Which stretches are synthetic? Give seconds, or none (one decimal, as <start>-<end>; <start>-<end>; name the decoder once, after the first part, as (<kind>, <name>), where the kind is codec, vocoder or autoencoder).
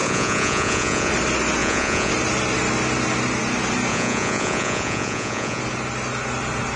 0.0-1.1 (vocoder, Vocos); 1.6-2.1; 3.9-5.6